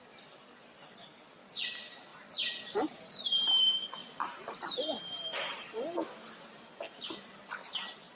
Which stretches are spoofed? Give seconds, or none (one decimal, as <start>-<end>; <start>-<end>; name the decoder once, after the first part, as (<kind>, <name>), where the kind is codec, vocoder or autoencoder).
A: 2.1-6.7 (vocoder, BigVGAN v2)